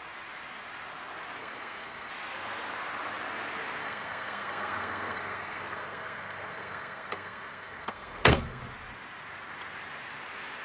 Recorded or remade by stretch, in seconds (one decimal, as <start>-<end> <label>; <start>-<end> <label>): 0.0-1.4 recorded; 1.4-2.1 remade; 2.1-3.8 recorded; 3.8-8.6 remade; 8.6-10.6 recorded

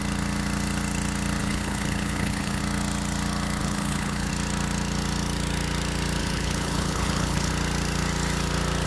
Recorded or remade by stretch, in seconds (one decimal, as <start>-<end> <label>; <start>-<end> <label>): 0.0-1.4 recorded; 1.4-2.6 remade; 2.6-3.6 recorded; 3.6-4.3 remade; 4.3-6.2 recorded; 6.2-7.5 remade; 7.5-8.9 recorded